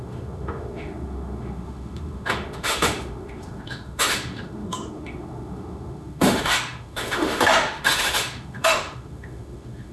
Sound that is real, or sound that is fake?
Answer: fake